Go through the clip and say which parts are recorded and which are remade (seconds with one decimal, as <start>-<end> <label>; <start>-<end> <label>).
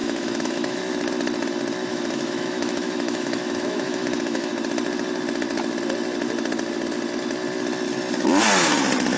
0.0-0.8 remade; 0.8-1.9 recorded; 1.9-4.5 remade; 4.5-9.2 recorded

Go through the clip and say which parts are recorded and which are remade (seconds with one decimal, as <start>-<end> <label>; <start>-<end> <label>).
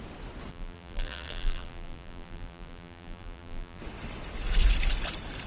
0.0-0.5 recorded; 0.5-3.8 remade; 3.8-5.5 recorded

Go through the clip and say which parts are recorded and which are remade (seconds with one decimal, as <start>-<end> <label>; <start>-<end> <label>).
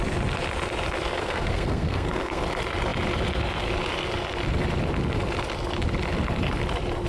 0.0-1.2 recorded; 1.2-2.4 remade; 2.4-7.1 recorded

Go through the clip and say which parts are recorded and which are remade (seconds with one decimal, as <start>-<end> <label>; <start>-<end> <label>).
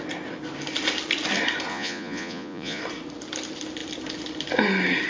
0.0-1.7 recorded; 1.7-2.8 remade; 2.8-5.1 recorded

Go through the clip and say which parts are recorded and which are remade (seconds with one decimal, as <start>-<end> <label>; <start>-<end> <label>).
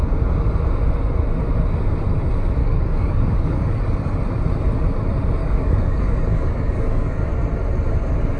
0.0-2.6 recorded; 2.6-3.8 remade; 3.8-5.4 recorded; 5.4-7.3 remade; 7.3-8.4 recorded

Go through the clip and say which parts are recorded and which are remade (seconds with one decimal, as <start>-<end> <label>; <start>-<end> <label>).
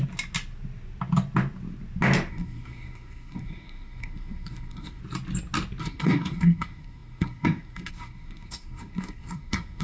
0.0-2.3 recorded; 2.3-5.0 remade; 5.0-5.8 recorded; 5.8-9.8 remade